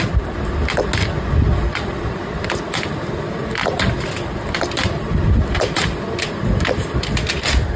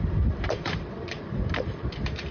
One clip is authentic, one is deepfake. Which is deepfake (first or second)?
second